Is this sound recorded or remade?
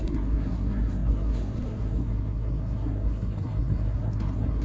remade